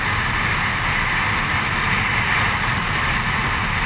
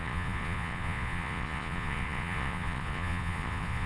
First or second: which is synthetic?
second